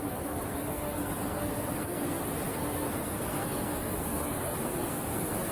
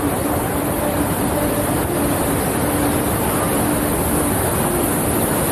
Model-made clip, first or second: first